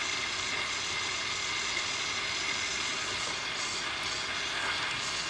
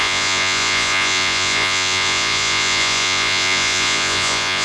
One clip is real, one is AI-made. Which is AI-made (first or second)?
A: second